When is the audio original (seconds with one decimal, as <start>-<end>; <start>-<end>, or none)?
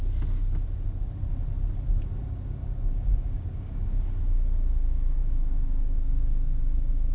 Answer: 0.0-2.6; 4.0-5.2; 6.6-7.1